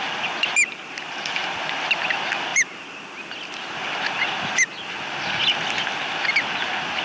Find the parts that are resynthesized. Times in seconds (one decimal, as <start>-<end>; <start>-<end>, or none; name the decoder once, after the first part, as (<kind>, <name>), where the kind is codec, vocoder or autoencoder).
none